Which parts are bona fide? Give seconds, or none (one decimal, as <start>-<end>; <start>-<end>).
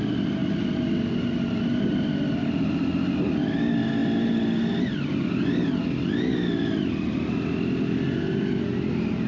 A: 0.0-9.3